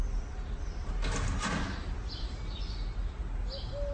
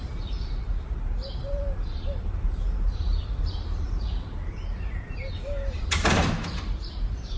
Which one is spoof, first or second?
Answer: second